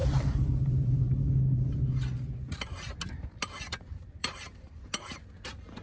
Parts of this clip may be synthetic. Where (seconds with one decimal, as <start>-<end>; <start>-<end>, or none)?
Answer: 0.0-1.7; 4.2-4.9